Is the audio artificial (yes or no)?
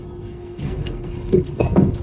yes